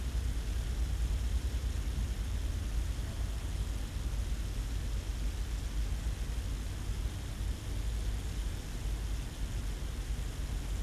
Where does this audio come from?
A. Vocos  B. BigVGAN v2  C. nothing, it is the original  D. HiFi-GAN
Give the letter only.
C